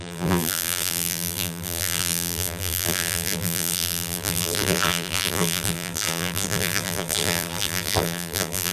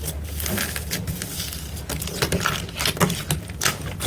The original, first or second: second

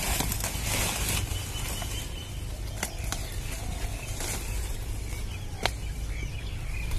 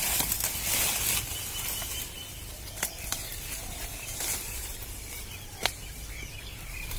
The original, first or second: first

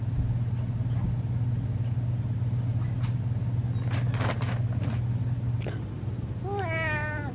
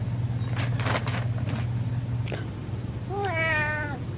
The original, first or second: first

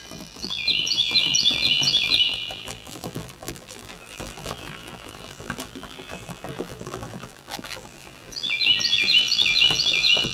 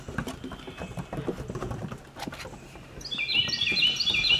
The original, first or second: second